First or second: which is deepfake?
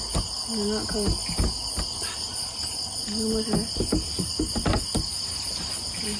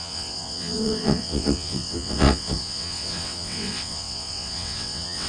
second